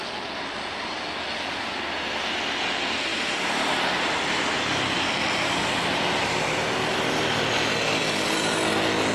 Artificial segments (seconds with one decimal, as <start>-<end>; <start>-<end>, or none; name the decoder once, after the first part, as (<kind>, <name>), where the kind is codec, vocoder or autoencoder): 3.1-7.5 (vocoder, BigVGAN v2)